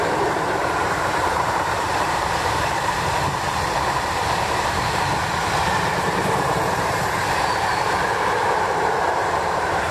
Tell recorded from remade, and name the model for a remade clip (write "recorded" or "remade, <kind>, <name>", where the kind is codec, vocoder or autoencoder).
remade, vocoder, BigVGAN v2